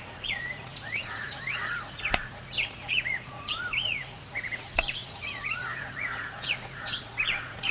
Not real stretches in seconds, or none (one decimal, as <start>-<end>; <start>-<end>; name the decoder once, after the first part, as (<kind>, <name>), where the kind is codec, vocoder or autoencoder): 0.0-7.7 (vocoder, Vocos)